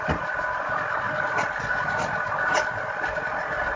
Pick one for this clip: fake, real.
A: real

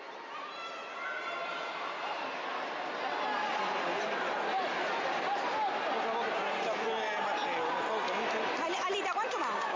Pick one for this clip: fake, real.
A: real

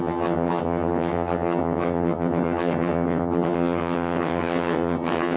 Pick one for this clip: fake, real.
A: fake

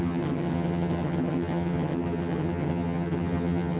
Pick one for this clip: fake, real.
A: fake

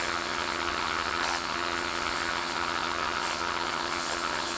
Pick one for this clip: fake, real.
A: fake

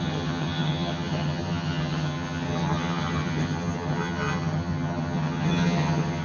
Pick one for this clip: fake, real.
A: fake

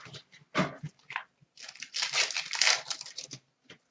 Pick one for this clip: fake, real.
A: real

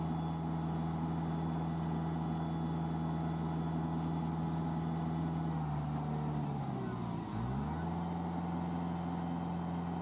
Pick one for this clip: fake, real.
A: real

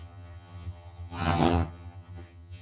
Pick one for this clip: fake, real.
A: fake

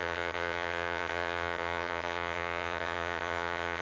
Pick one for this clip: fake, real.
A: fake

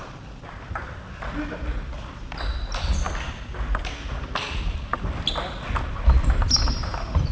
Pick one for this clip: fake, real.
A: real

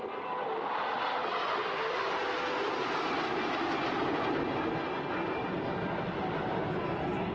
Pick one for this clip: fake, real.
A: real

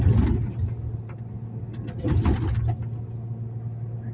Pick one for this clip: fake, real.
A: real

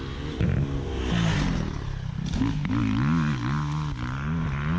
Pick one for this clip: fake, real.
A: real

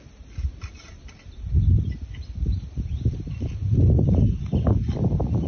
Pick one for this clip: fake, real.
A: real